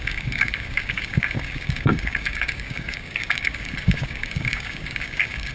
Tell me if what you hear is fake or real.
fake